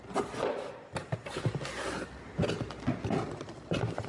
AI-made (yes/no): no